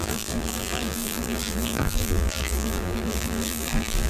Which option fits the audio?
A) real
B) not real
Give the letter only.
B